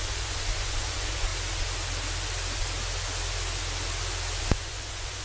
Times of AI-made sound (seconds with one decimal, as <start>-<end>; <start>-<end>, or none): 0.0-1.3; 4.4-5.2